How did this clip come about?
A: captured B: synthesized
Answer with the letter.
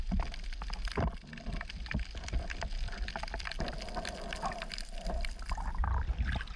A